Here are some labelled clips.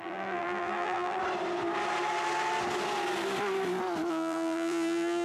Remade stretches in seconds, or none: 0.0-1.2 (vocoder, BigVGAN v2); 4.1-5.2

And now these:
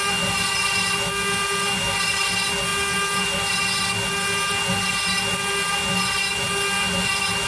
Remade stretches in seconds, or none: none

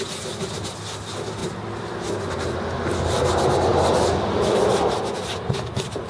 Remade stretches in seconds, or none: none

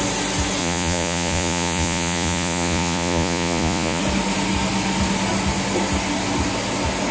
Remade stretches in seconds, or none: 0.6-4.0 (vocoder, Vocos)

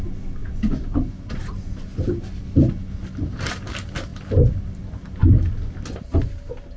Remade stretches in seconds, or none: none

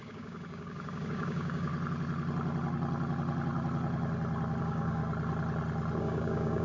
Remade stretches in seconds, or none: 0.0-1.7 (codec, DAC); 4.6-5.0; 6.0-6.6

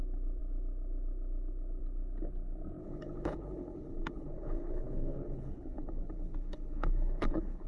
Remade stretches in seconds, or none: 2.8-7.7 (codec, HILCodec)

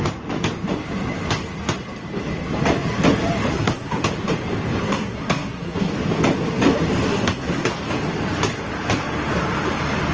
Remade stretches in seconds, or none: 3.5-4.0 (codec, SNAC); 4.8-5.9; 7.1-7.7